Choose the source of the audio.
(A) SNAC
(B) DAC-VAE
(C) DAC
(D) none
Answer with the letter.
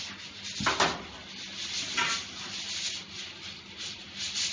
D